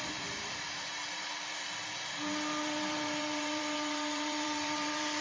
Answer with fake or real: fake